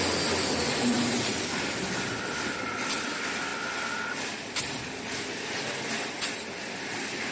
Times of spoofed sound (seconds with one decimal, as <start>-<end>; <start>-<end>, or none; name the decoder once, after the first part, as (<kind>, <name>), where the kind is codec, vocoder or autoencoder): none